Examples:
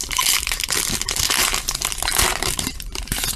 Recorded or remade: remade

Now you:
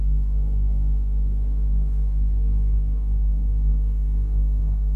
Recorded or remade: remade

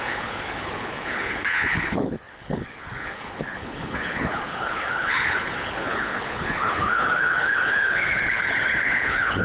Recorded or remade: remade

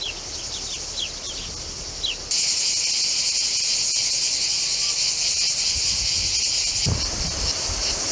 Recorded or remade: recorded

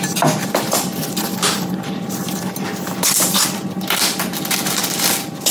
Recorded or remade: remade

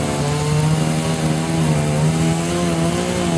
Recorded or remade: recorded